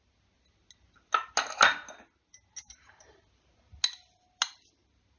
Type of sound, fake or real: real